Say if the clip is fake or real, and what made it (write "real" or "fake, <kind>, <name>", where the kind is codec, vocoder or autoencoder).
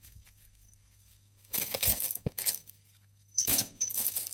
fake, codec, SNAC